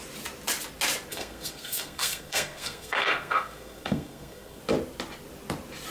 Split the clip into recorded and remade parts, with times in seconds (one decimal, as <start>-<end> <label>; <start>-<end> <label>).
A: 0.0-1.1 recorded; 1.1-4.6 remade; 4.6-5.9 recorded